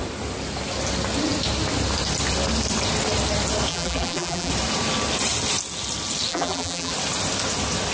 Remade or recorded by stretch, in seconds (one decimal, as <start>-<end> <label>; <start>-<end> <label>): 0.0-3.7 recorded; 3.7-4.5 remade; 4.5-6.3 recorded; 6.3-6.9 remade; 6.9-7.9 recorded